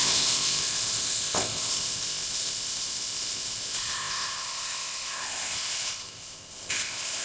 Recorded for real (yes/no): no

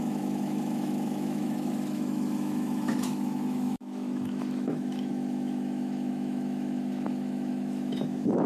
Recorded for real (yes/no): no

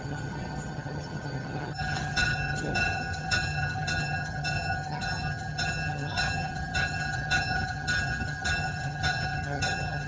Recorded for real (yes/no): no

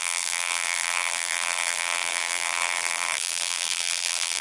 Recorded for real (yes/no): no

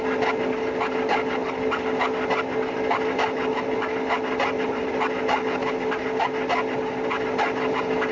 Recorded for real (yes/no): yes